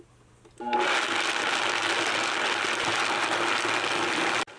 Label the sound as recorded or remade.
recorded